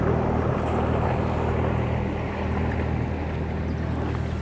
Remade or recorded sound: recorded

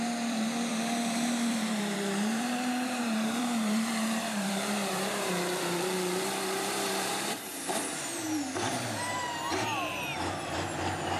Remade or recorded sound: remade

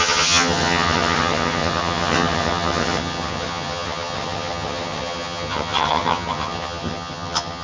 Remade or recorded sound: remade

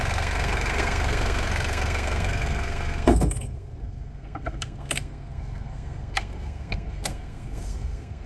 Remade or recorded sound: remade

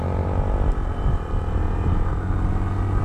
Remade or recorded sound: recorded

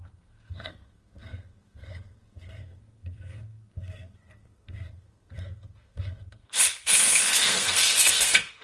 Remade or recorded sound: remade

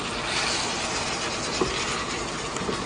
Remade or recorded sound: recorded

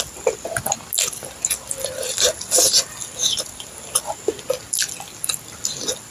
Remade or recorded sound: recorded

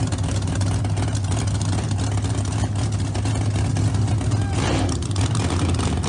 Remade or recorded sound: recorded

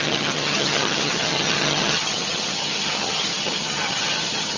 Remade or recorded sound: remade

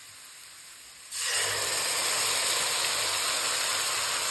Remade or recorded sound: recorded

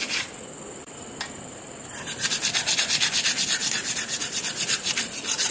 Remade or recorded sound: remade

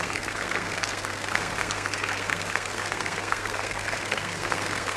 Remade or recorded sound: remade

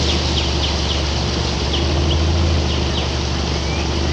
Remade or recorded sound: recorded